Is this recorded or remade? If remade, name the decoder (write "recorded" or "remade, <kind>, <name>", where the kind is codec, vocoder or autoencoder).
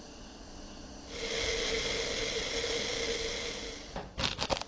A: recorded